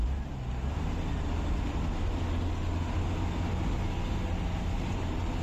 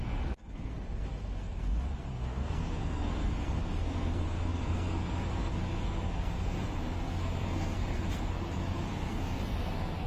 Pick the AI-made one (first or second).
second